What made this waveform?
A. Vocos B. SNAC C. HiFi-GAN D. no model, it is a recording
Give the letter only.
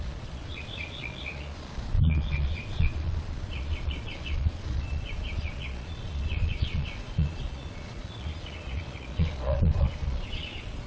A